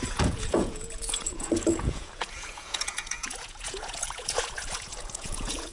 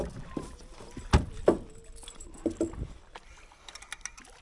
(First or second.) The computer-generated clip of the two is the first